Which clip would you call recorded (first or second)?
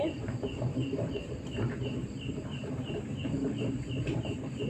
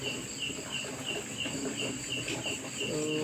second